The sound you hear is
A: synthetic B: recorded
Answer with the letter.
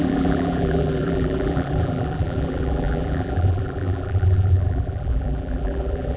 A